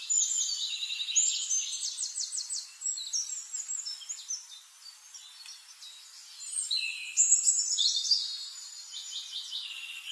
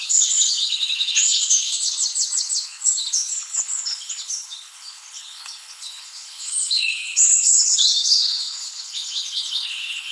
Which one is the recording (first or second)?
first